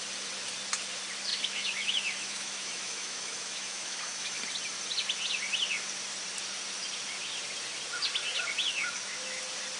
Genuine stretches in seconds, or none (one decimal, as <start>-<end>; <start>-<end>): 0.0-1.3; 4.4-8.7; 9.4-9.8